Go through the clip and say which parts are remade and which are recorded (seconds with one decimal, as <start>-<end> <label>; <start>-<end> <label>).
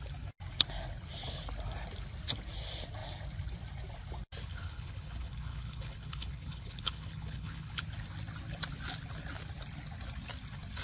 0.0-4.5 recorded; 4.5-7.8 remade; 7.8-10.8 recorded